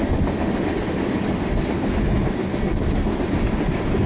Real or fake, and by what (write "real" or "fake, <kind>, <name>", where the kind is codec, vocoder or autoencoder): real